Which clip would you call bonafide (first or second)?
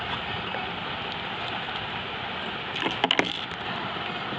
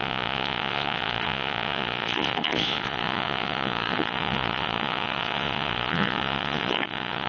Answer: first